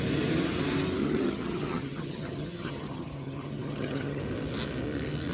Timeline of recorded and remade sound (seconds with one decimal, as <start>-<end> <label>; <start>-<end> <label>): 0.0-1.0 recorded; 1.0-4.2 remade; 4.2-5.3 recorded